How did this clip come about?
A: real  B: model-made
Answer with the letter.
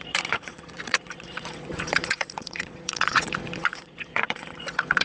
B